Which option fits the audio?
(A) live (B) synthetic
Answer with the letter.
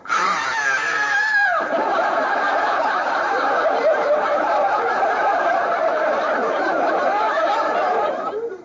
B